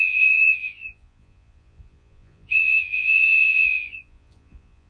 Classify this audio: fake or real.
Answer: fake